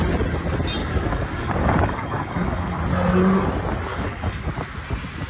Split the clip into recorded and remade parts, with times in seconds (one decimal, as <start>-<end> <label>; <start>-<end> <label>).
0.0-0.8 recorded; 0.8-2.8 remade; 2.8-3.9 recorded; 3.9-4.5 remade; 4.5-5.3 recorded